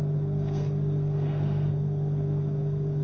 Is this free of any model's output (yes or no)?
no